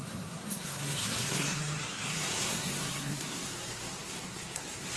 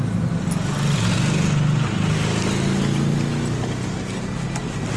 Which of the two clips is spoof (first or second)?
first